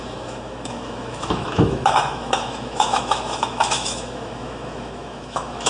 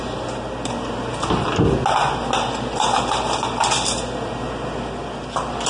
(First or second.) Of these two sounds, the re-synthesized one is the first